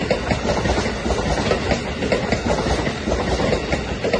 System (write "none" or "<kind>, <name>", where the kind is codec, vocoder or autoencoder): none